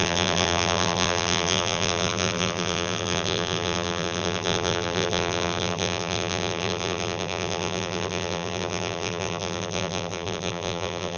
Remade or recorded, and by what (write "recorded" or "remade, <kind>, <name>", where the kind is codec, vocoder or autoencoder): remade, vocoder, BigVGAN v2